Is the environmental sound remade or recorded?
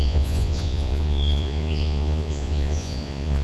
remade